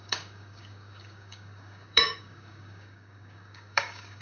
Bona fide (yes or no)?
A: no